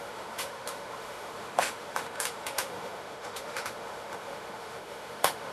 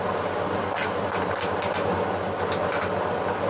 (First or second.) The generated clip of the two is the first